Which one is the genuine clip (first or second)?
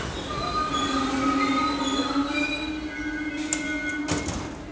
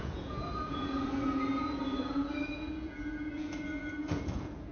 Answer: first